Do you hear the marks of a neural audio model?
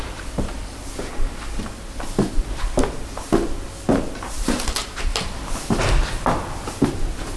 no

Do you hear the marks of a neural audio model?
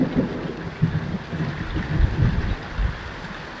no